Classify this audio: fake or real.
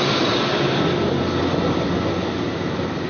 real